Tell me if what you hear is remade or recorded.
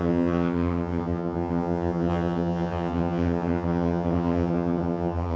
remade